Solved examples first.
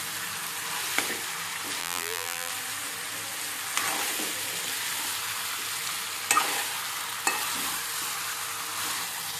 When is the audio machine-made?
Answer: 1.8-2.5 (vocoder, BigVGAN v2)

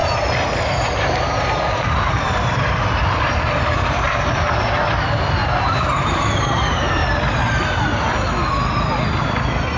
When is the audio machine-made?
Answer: 0.0-5.4 (vocoder, BigVGAN v2); 6.0-7.0

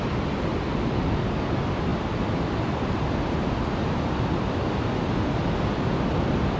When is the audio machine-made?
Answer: none

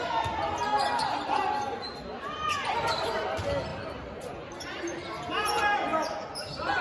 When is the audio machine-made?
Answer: none

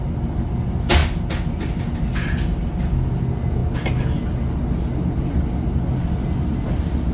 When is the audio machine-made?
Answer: none

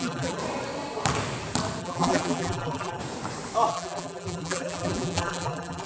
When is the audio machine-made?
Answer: 0.0-0.4 (vocoder, BigVGAN v2); 1.8-3.0; 3.7-5.9